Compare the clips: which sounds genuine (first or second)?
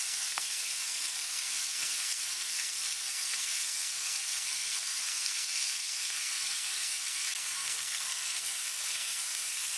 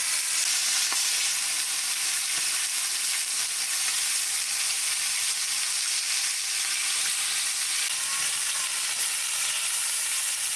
second